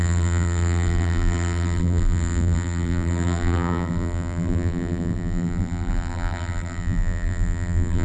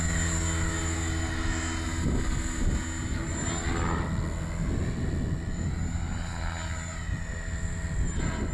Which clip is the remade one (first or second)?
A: first